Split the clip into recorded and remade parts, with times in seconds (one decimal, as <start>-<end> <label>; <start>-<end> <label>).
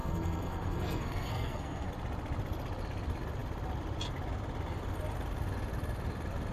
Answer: 0.0-1.9 remade; 1.9-6.5 recorded